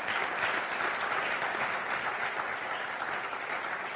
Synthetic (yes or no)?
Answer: yes